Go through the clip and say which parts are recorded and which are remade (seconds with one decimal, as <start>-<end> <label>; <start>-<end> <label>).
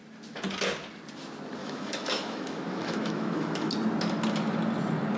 0.0-1.6 recorded; 1.6-3.7 remade; 3.7-5.2 recorded